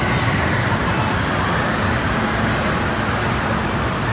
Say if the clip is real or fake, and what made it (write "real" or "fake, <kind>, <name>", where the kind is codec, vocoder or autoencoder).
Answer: real